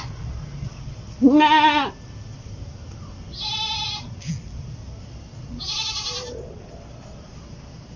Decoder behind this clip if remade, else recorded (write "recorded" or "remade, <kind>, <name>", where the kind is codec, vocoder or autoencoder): recorded